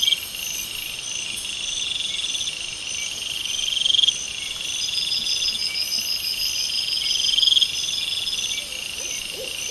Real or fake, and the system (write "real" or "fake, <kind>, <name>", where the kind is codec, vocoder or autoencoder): real